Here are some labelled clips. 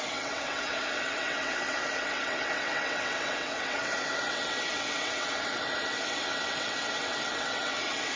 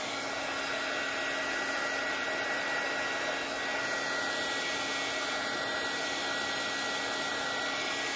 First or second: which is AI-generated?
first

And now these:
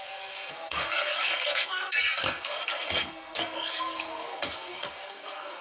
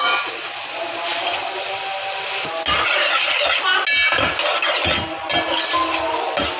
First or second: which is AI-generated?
first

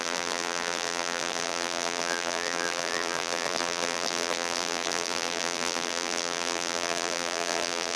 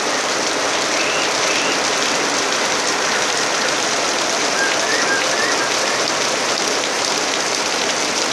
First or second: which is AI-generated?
first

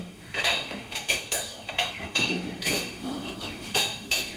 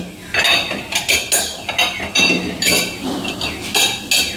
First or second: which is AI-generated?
first